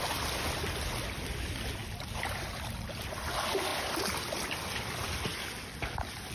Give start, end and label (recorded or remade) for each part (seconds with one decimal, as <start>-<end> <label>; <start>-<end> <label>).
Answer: 0.0-6.3 recorded

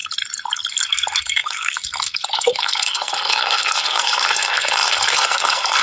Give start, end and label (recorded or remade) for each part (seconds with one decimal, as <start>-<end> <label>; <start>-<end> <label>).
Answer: 0.0-0.7 recorded; 0.7-5.8 remade

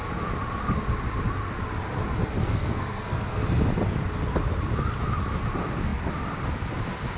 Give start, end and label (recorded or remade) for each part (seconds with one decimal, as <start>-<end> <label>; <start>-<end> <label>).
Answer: 0.0-2.4 recorded; 2.4-3.4 remade; 3.4-7.2 recorded